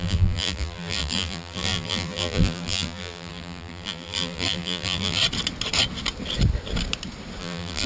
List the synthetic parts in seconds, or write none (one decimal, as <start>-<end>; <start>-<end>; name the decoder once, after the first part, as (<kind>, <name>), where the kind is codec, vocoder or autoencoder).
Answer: 0.0-5.2 (vocoder, BigVGAN v2); 7.4-7.9